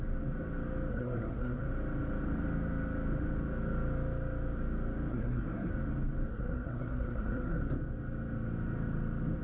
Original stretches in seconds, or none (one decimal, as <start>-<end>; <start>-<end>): 0.0-0.9; 1.6-5.1; 5.7-6.3; 7.6-9.4